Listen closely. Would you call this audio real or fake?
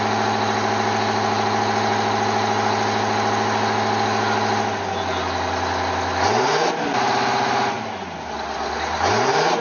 real